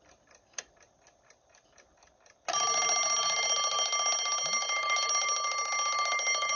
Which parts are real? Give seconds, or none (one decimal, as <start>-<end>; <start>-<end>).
0.0-6.6